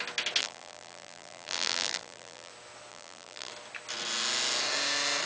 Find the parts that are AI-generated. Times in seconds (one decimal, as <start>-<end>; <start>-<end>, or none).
0.4-2.5; 2.9-3.5